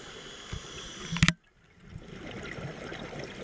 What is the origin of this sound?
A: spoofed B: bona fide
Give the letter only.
B